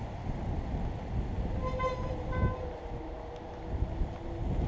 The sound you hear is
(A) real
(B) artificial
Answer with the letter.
A